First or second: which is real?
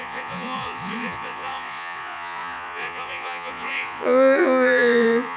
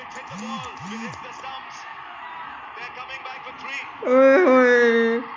second